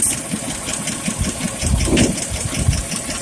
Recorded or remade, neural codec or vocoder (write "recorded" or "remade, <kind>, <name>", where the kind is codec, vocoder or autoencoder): recorded